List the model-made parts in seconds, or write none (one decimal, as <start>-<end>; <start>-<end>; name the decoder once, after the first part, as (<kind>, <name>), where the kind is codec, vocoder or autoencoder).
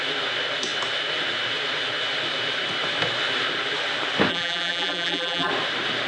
4.3-5.5 (vocoder, BigVGAN v2)